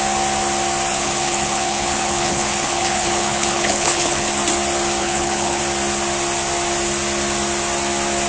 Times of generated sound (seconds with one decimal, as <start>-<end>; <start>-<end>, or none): 0.9-4.3; 5.0-5.6